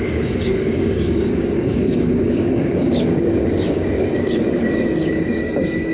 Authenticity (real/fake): fake